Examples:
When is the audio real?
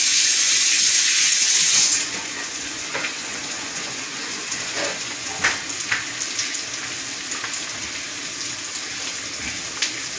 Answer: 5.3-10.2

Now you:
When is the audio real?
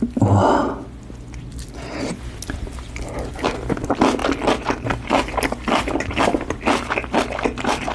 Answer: 0.0-7.9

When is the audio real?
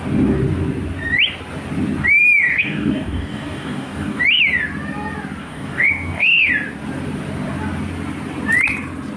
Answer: 0.0-2.5; 4.2-5.4; 6.5-9.2